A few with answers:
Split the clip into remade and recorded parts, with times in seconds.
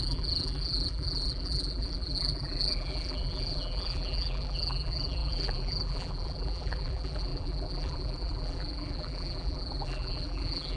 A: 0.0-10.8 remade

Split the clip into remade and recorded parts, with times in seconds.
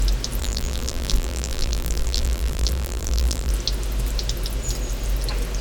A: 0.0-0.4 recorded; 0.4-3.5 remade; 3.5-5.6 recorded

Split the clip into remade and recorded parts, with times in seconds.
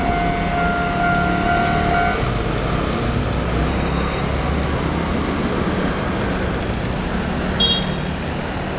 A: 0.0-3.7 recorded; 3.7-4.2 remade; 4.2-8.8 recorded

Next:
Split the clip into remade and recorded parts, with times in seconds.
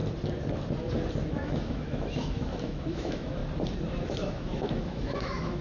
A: 0.0-1.3 recorded; 1.3-3.4 remade; 3.4-3.9 recorded; 3.9-5.6 remade